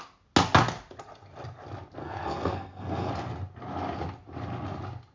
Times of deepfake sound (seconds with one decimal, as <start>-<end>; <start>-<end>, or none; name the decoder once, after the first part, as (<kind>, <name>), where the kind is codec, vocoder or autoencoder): 2.0-3.1 (codec, SNAC)